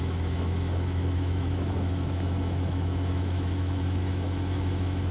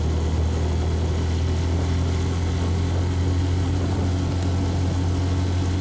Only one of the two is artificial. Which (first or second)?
first